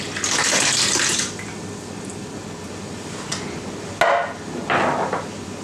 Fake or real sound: real